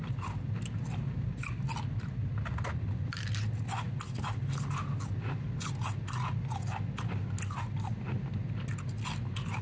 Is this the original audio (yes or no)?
yes